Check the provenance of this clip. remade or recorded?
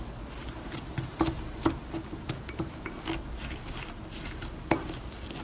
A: recorded